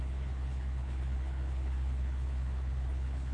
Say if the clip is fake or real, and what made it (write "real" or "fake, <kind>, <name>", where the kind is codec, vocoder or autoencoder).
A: fake, codec, HILCodec